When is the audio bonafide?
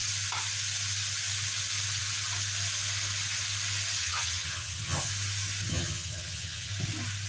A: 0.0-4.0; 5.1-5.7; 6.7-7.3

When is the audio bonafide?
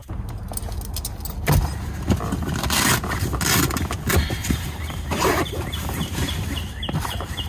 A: 0.0-4.4